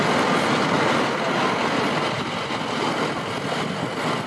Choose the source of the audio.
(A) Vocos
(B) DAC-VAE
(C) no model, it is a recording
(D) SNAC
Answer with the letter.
C